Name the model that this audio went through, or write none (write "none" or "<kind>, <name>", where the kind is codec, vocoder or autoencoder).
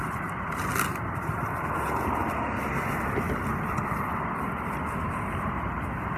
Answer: none